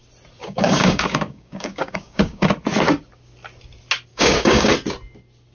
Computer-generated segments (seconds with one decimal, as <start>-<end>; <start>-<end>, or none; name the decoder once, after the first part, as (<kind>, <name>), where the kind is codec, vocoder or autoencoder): 0.4-2.5 (codec, DAC); 4.1-4.7